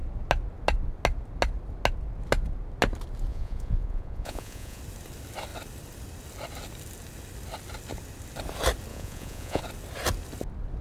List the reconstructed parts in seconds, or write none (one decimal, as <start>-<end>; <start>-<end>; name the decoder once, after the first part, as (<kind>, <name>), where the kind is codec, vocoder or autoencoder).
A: 3.3-4.8 (vocoder, Vocos); 8.9-9.6